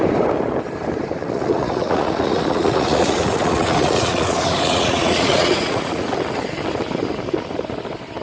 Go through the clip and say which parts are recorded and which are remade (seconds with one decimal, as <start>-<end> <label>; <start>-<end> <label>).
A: 0.0-1.2 recorded; 1.2-6.1 remade; 6.1-8.2 recorded